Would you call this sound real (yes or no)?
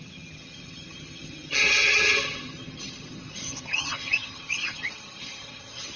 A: no